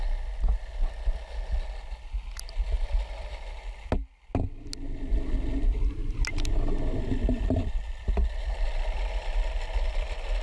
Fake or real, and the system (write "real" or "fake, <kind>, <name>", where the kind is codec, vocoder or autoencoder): real